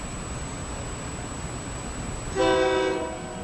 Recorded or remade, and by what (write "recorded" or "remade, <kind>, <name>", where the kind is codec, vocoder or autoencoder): recorded